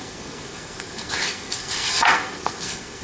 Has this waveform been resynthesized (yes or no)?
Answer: yes